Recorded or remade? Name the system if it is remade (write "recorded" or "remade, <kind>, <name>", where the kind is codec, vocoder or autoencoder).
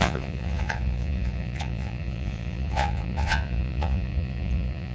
remade, vocoder, Vocos